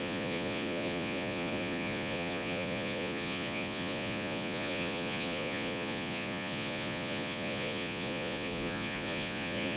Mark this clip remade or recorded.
remade